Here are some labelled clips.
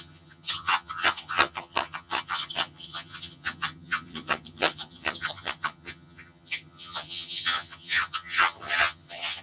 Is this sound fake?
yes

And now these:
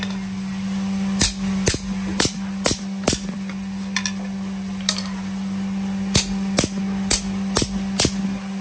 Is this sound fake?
no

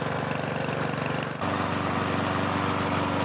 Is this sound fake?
no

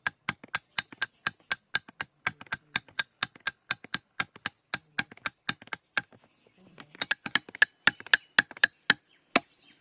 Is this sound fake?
no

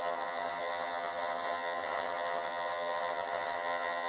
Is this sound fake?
yes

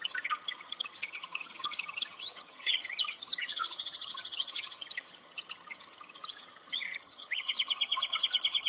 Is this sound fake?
yes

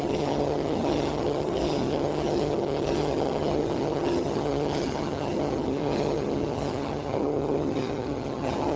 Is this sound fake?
yes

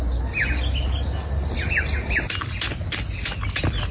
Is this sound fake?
no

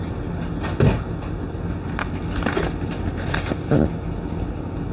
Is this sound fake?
no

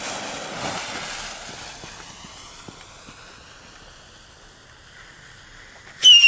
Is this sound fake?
no